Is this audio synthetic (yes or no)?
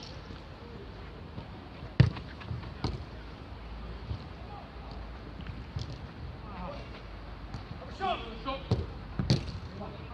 no